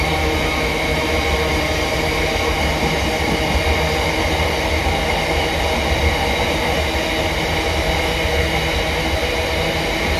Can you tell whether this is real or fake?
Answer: real